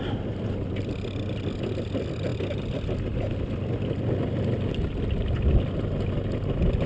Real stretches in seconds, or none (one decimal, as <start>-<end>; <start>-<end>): 0.0-6.9